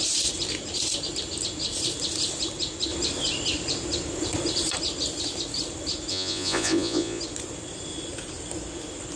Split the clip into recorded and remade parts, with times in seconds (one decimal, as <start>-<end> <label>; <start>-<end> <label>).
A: 0.0-6.1 recorded; 6.1-7.2 remade; 7.2-9.2 recorded